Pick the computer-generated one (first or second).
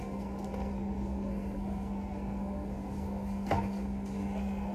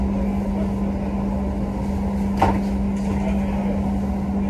first